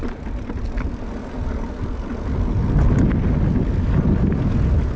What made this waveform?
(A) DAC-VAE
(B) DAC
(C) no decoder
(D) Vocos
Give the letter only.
C